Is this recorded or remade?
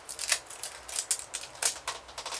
recorded